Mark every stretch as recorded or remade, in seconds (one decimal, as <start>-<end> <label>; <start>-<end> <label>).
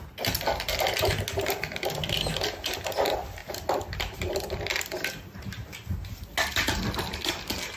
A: 0.0-7.8 recorded